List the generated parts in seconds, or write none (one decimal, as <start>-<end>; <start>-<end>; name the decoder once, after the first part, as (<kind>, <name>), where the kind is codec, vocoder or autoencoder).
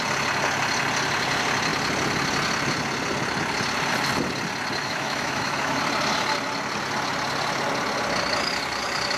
4.8-5.8 (autoencoder, DAC-VAE)